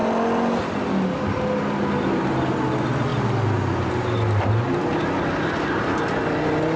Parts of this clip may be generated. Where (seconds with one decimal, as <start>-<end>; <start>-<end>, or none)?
none